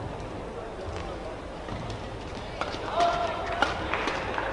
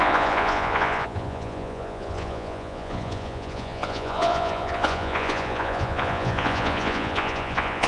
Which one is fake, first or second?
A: second